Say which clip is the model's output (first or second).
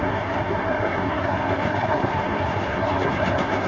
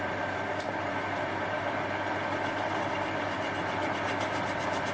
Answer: first